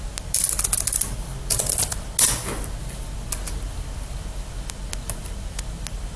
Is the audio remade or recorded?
recorded